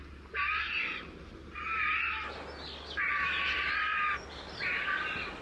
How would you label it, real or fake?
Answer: real